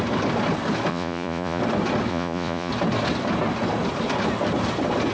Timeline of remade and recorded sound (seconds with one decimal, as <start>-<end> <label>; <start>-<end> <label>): 0.0-0.9 recorded; 0.9-1.6 remade; 1.6-2.1 recorded; 2.1-2.7 remade; 2.7-5.1 recorded